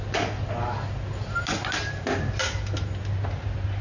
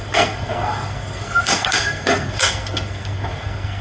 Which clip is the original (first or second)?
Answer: first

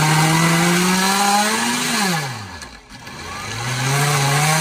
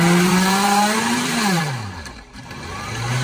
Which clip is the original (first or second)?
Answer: first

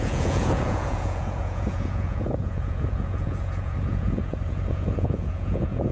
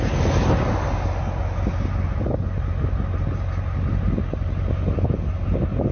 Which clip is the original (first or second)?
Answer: second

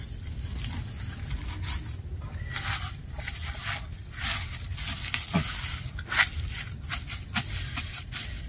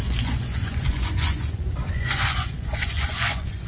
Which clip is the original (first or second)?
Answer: first